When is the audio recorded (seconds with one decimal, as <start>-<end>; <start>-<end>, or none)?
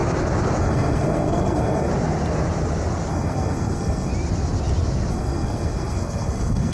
0.0-0.6; 1.9-3.1; 4.1-5.1